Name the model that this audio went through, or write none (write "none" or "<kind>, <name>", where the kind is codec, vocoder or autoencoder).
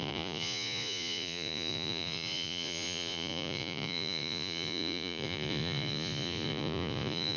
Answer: vocoder, Vocos